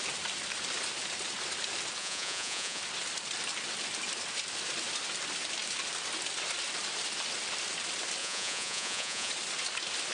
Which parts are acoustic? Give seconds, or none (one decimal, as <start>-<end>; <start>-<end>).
0.0-2.0; 2.8-8.2; 9.3-10.1